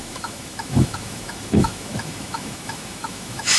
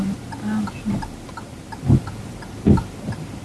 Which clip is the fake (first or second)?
first